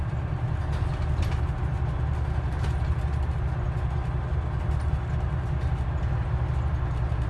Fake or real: real